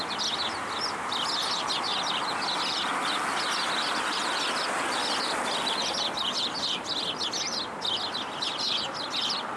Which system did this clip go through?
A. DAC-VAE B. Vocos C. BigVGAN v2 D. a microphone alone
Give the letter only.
D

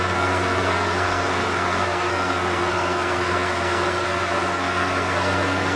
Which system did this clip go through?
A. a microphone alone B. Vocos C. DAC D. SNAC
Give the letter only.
D